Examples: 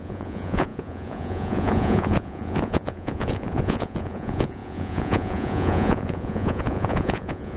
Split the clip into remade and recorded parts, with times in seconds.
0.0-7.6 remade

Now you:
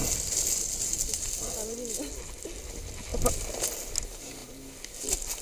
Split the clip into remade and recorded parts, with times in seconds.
0.0-5.4 recorded

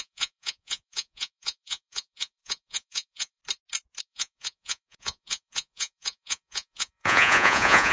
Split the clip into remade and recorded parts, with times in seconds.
0.0-3.4 remade; 3.4-4.0 recorded; 4.0-7.9 remade

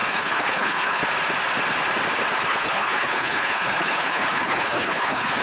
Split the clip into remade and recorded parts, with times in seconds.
0.0-1.0 remade; 1.0-2.4 recorded; 2.4-5.4 remade

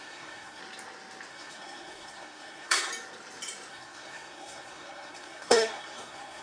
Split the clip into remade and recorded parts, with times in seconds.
0.0-0.6 remade; 0.6-1.3 recorded; 1.3-2.9 remade; 2.9-3.7 recorded; 3.7-6.4 remade

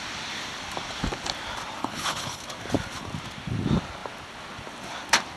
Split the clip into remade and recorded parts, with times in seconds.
0.0-1.8 recorded; 1.8-2.4 remade; 2.4-5.4 recorded

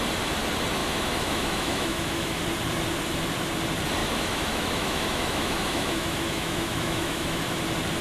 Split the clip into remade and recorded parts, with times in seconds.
0.0-0.8 recorded; 0.8-2.4 remade; 2.4-4.0 recorded; 4.0-7.6 remade; 7.6-8.0 recorded

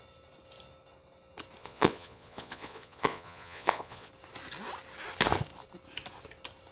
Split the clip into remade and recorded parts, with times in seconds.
0.0-1.6 recorded; 1.6-4.1 remade; 4.1-6.7 recorded